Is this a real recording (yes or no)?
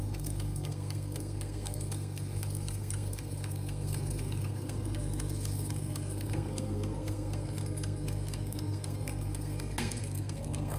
no